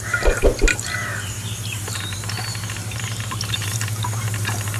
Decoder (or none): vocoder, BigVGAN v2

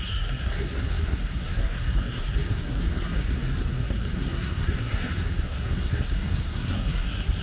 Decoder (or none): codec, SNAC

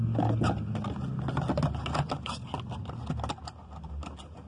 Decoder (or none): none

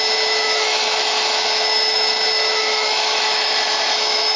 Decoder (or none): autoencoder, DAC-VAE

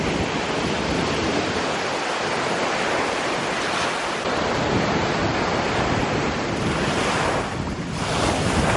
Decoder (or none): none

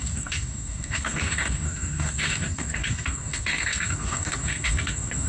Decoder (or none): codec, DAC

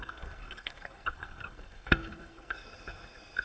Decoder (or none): codec, SNAC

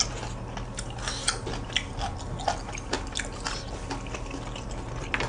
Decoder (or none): none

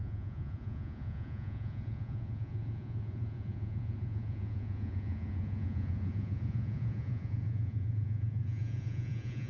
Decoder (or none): vocoder, Vocos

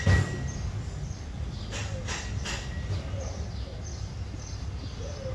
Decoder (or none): none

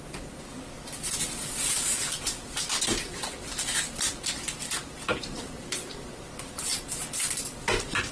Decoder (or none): none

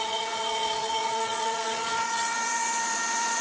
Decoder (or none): vocoder, Vocos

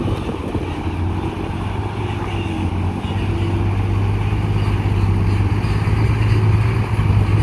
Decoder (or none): none